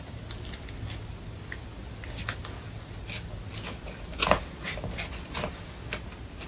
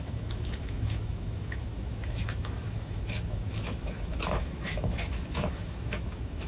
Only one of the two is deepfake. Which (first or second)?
second